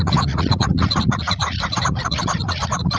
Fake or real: fake